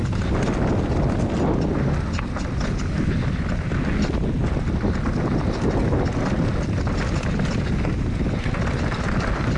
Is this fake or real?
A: real